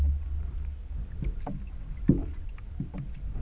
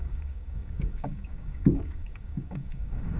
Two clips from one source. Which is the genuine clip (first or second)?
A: first